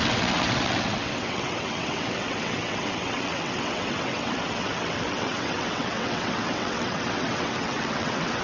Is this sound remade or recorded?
remade